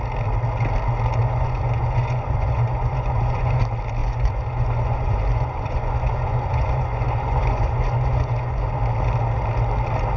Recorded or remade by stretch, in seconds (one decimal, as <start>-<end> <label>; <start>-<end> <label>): 0.0-1.2 recorded; 1.2-3.6 remade; 3.6-4.0 recorded; 4.0-8.7 remade; 8.7-10.2 recorded